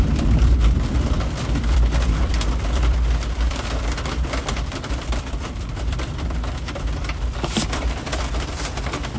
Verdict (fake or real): fake